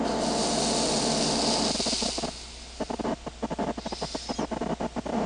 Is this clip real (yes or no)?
yes